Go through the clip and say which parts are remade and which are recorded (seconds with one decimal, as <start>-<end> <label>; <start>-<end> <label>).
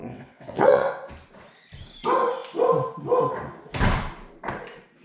0.0-1.1 remade; 1.1-5.0 recorded